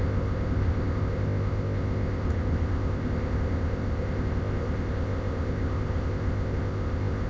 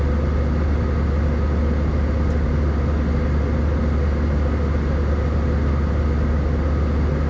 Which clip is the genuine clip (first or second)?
second